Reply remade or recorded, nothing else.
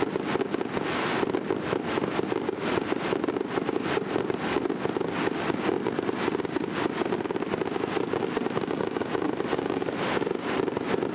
recorded